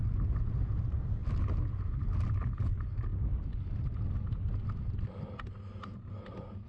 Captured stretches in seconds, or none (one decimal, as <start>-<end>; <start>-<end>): 0.0-6.7